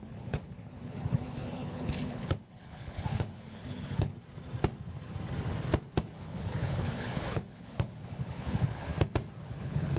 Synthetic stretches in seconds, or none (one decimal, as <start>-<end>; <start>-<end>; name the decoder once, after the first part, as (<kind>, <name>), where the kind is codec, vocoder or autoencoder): 0.0-4.1 (codec, HILCodec); 6.0-8.9; 9.4-10.0